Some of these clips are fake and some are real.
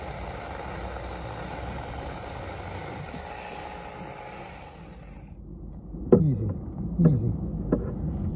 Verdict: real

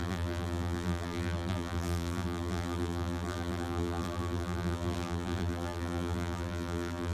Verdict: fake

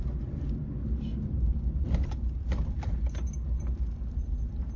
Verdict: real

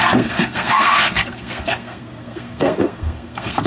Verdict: fake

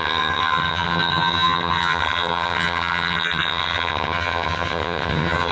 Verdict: fake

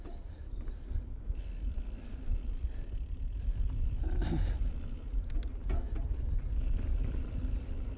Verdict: real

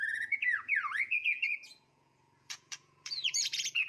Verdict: fake